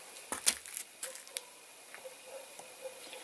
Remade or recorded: recorded